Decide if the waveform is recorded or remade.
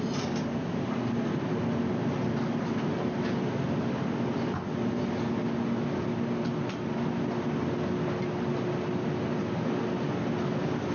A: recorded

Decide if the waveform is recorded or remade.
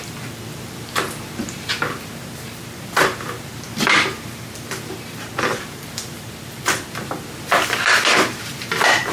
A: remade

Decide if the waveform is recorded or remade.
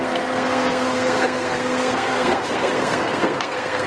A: remade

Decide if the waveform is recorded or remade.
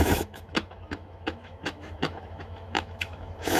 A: remade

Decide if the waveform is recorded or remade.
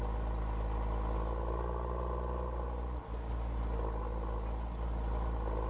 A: recorded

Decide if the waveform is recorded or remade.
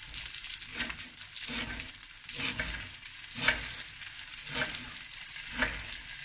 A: recorded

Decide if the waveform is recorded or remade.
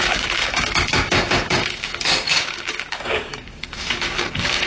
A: remade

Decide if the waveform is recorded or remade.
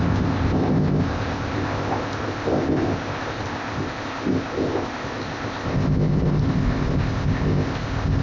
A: remade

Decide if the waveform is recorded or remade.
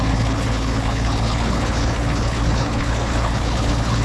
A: remade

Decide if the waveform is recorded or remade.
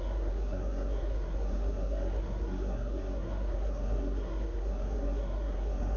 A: remade